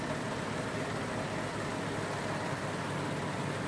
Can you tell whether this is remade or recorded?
recorded